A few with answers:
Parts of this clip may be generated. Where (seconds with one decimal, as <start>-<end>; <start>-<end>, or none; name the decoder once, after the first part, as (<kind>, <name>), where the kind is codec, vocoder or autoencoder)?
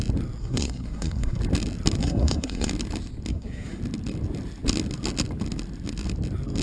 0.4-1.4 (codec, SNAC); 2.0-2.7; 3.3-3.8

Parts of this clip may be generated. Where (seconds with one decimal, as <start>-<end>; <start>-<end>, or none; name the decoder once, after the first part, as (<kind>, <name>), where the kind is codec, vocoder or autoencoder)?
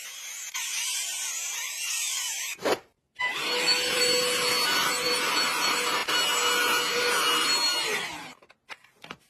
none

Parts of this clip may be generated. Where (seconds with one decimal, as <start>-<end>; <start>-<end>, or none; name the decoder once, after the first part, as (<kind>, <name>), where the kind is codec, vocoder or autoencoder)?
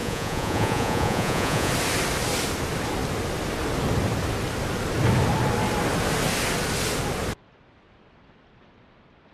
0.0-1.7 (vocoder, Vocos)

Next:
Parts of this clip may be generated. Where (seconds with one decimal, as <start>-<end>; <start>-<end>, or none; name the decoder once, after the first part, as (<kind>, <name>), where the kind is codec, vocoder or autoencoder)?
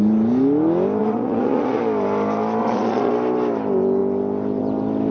1.0-1.8 (vocoder, Vocos); 2.6-3.1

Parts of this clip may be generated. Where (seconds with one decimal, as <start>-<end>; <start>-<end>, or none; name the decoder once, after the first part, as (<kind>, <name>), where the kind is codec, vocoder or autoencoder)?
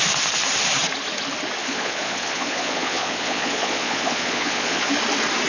1.6-4.9 (vocoder, Vocos)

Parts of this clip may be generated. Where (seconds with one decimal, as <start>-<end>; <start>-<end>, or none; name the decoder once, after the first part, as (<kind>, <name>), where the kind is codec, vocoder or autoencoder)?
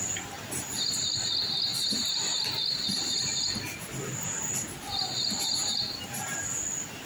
none